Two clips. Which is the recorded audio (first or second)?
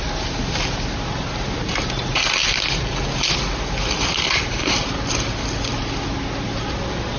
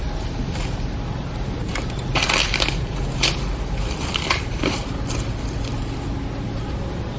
first